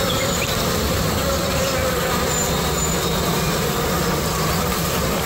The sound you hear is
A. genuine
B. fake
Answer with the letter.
A